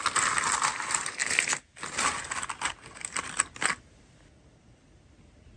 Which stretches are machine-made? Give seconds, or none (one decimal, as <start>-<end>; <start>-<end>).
none